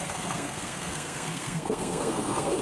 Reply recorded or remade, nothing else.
remade